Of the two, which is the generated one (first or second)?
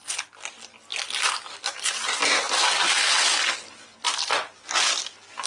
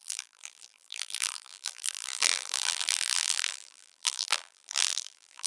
second